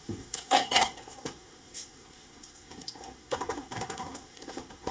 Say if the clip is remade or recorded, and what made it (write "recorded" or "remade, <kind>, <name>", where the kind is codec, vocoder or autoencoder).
remade, codec, SNAC